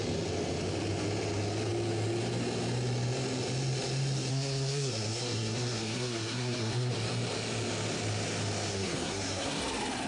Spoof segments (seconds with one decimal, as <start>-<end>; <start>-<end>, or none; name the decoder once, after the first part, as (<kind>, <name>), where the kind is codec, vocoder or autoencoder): 4.3-6.9 (codec, SNAC); 8.7-9.6